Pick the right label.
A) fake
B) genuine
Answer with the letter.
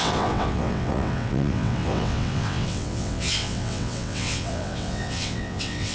A